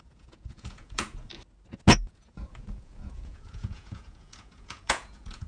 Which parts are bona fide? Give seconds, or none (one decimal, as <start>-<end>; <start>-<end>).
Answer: 1.3-1.9